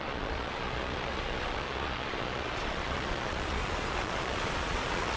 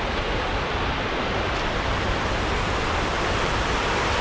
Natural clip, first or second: second